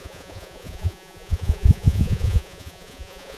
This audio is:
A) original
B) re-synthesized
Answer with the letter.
B